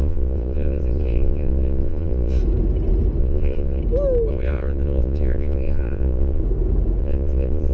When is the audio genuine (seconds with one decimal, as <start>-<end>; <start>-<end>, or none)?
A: 2.4-3.2; 3.8-4.3; 6.4-7.0